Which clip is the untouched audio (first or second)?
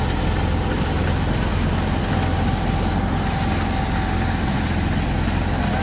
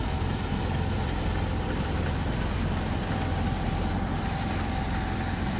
first